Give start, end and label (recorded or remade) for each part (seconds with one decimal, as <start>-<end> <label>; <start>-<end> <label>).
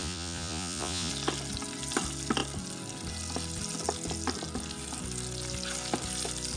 0.0-1.1 remade; 1.1-6.6 recorded